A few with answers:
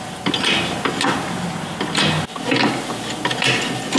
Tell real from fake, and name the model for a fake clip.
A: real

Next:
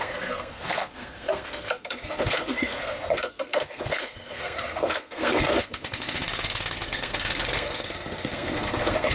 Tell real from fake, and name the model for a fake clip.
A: fake, codec, SNAC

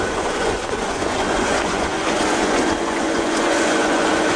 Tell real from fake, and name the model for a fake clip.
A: fake, vocoder, Vocos